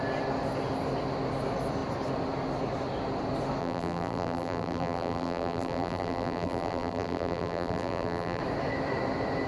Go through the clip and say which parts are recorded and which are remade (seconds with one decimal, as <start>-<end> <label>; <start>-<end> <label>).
0.0-3.6 recorded; 3.6-8.4 remade; 8.4-9.5 recorded